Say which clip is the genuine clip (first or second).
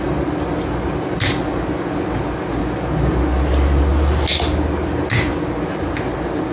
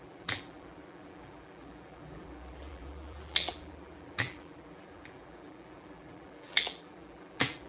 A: first